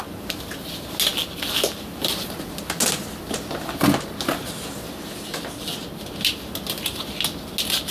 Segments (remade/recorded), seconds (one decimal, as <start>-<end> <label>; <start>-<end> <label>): 0.0-7.9 recorded